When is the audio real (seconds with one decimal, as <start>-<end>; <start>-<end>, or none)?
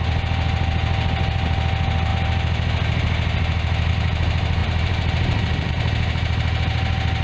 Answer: 0.0-4.6; 5.7-7.2